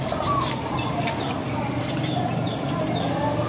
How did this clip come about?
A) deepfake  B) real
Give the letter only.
B